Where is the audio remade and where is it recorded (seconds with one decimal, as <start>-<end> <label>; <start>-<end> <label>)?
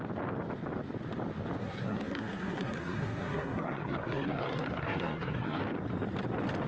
0.0-1.6 recorded; 1.6-5.6 remade; 5.6-6.7 recorded